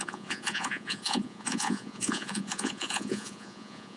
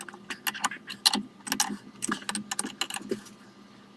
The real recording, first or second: second